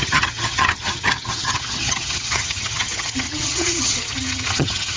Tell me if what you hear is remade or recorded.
remade